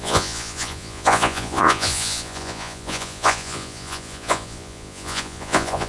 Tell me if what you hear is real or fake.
fake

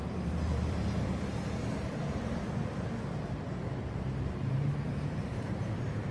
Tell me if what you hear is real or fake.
fake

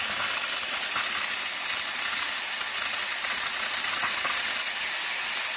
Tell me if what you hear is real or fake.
real